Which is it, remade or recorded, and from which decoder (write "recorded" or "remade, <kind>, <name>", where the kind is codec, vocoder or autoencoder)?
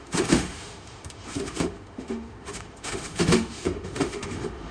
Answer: remade, autoencoder, DAC-VAE